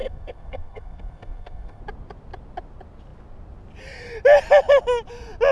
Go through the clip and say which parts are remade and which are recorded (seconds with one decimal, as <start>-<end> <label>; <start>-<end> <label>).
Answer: 0.0-1.8 remade; 1.8-5.5 recorded